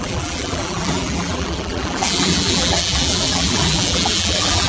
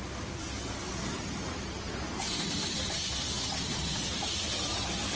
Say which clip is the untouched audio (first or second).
second